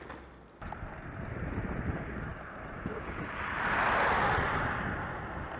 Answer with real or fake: real